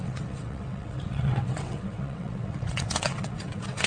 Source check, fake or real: fake